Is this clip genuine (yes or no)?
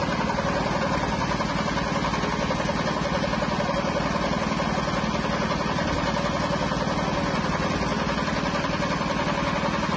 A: yes